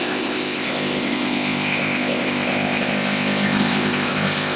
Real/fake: fake